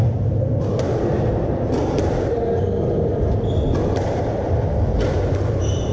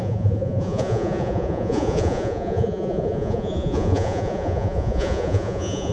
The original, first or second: first